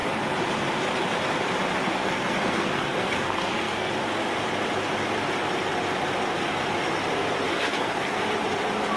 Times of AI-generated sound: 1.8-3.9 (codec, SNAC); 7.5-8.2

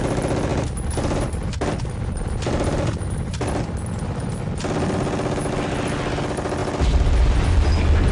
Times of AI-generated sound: none

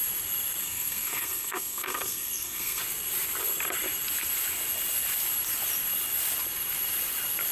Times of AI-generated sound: 0.6-2.8 (codec, SNAC)